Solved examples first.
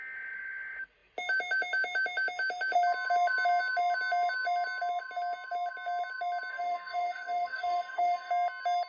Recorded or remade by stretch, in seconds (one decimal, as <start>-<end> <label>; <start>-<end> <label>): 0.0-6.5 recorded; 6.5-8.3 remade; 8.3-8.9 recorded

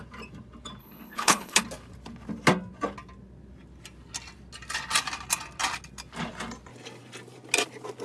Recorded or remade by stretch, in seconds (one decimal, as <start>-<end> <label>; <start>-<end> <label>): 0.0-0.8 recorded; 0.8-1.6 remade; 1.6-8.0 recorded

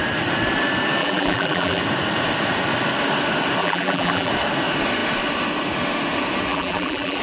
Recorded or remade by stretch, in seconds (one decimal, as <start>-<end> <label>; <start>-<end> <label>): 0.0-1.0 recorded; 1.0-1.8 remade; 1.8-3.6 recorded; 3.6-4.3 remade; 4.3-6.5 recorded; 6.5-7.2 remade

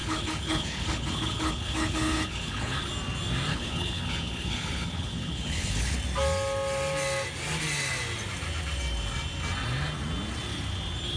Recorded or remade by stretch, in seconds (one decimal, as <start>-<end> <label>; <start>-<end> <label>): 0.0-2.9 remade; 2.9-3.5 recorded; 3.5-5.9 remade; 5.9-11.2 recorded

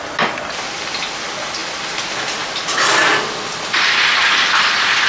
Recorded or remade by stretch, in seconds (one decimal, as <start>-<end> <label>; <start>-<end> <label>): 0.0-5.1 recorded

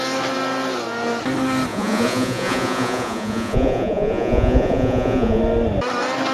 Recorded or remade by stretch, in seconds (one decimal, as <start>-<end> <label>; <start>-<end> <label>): 0.0-1.7 recorded; 1.7-5.4 remade; 5.4-6.3 recorded

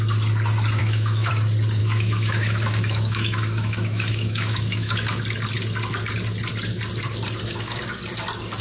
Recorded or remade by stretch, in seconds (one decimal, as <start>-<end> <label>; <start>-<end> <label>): 0.0-0.8 recorded; 0.8-1.3 remade; 1.3-1.8 recorded; 1.8-5.2 remade; 5.2-8.6 recorded

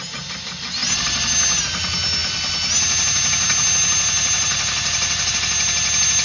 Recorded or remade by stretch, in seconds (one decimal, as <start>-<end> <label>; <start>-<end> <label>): 0.0-6.2 recorded